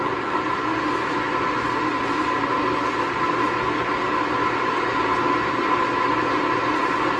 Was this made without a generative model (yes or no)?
yes